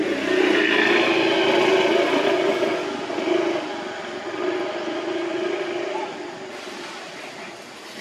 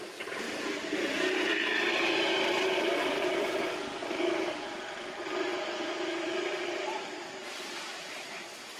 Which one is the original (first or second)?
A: first